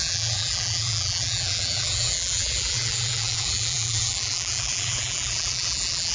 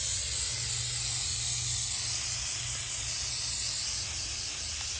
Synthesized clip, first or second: first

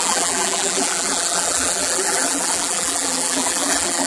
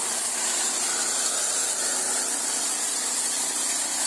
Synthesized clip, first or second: first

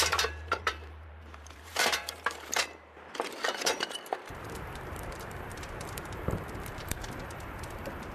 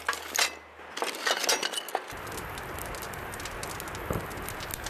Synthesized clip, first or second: first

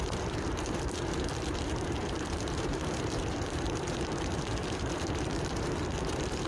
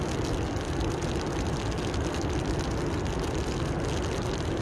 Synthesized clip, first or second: first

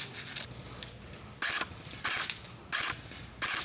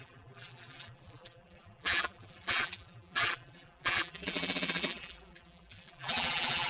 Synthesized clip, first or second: second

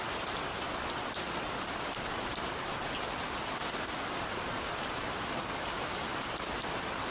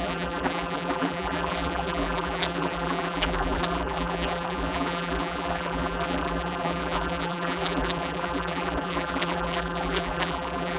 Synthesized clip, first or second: second